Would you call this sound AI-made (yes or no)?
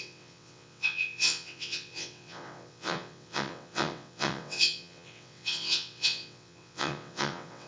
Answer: yes